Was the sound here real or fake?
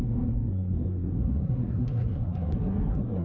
fake